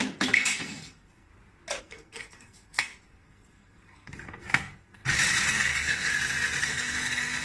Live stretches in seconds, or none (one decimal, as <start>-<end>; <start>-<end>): 1.3-1.8; 5.0-5.5; 6.1-6.6